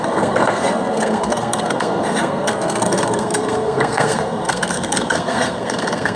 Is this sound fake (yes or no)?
yes